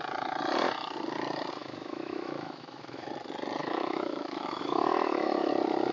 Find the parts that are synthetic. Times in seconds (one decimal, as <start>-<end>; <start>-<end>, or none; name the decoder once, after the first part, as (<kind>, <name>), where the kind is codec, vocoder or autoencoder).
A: 1.6-3.1 (autoencoder, DAC-VAE); 3.6-5.5